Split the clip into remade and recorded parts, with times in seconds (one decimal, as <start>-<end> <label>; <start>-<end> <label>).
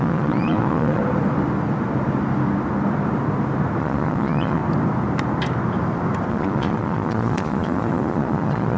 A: 0.0-1.0 remade; 1.0-3.8 recorded; 3.8-4.6 remade; 4.6-6.3 recorded; 6.3-8.8 remade